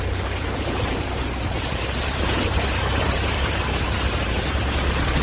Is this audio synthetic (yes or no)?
yes